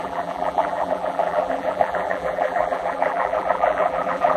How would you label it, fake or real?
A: fake